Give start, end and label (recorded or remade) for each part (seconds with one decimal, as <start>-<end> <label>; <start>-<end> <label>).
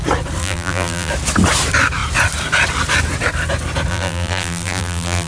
0.0-0.4 recorded; 0.4-1.1 remade; 1.1-3.9 recorded; 3.9-5.3 remade